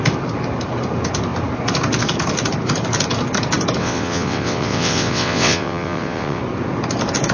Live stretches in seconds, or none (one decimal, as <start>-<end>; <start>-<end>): 0.0-3.8; 6.4-7.3